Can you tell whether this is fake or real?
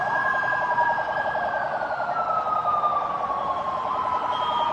real